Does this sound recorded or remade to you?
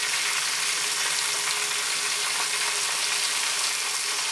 recorded